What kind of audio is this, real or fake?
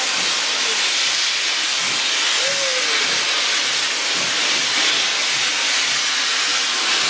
real